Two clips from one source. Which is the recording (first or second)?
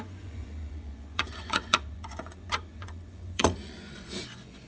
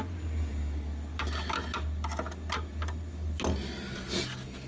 second